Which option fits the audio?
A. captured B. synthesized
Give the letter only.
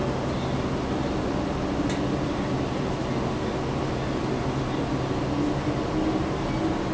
A